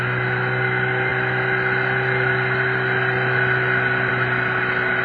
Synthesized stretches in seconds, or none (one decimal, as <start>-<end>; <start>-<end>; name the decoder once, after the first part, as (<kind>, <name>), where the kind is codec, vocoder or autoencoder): none